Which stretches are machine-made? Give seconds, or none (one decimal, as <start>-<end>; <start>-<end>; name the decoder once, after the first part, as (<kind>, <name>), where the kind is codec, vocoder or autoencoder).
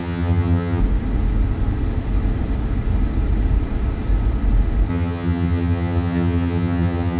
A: 0.0-0.8 (vocoder, HiFi-GAN); 4.9-7.2